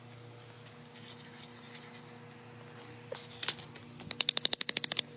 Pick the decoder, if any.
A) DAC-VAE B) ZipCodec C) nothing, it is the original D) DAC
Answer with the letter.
C